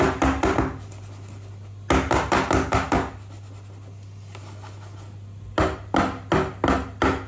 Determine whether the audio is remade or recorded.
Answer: recorded